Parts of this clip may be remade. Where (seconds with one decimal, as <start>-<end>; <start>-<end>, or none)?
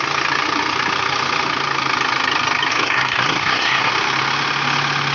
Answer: 2.7-3.9